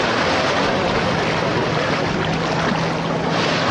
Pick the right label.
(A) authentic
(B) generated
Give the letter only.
A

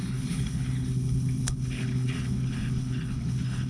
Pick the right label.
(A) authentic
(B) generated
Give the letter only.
B